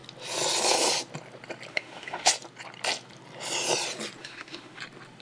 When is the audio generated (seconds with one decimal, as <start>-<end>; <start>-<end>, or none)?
1.7-2.3; 4.2-4.8